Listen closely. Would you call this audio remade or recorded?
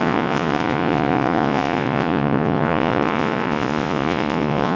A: remade